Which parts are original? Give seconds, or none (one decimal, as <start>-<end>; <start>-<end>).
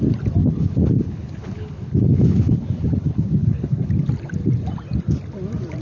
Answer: 0.0-0.4; 3.9-5.8